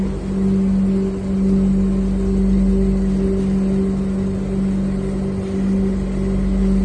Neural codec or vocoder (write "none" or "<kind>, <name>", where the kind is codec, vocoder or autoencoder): none